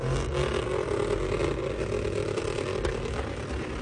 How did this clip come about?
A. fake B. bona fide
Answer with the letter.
B